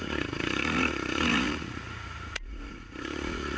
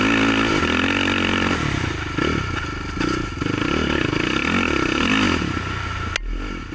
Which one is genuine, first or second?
second